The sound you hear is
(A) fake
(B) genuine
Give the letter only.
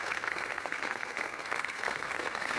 A